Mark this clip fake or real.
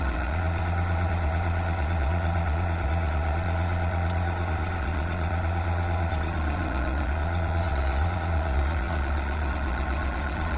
fake